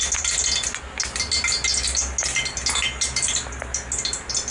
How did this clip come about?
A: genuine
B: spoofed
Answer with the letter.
A